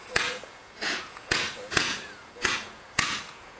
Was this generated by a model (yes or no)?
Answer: yes